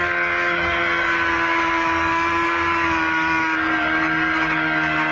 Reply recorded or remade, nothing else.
remade